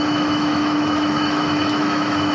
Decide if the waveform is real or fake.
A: fake